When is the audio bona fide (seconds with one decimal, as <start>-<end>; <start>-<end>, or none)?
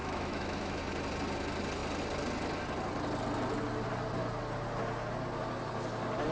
0.8-6.3